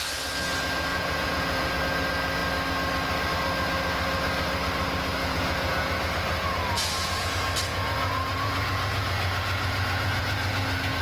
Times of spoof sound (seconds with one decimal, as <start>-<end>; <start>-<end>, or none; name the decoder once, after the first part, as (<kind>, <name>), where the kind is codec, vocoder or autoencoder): 0.9-1.8 (vocoder, Vocos); 5.2-7.3; 7.7-11.0